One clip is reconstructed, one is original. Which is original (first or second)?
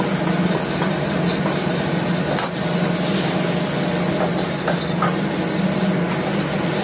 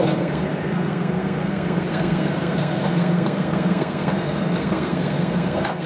first